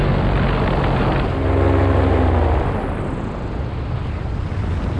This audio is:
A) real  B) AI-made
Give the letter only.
A